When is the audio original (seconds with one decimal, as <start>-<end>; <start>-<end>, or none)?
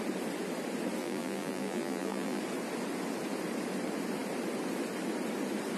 0.0-1.0; 2.4-5.8